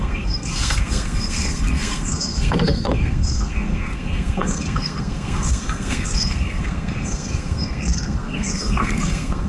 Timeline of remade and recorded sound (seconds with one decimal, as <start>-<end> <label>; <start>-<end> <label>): 0.0-9.5 remade